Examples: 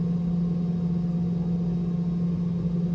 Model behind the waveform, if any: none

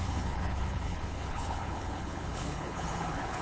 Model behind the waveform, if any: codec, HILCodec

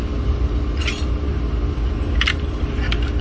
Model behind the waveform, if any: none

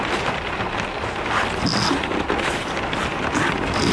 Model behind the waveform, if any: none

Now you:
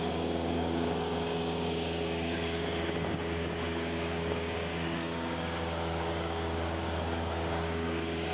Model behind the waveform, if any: codec, DAC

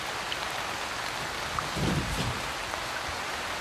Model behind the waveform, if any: none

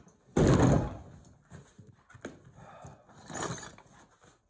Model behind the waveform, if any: none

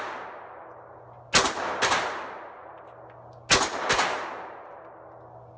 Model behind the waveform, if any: none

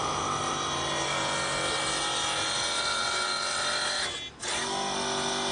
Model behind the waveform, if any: none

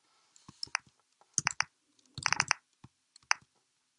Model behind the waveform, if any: none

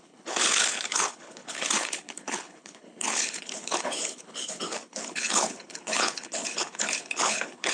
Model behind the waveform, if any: codec, HILCodec